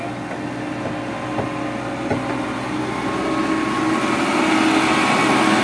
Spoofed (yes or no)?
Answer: no